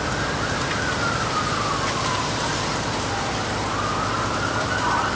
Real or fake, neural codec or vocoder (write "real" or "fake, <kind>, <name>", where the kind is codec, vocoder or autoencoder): fake, vocoder, BigVGAN v2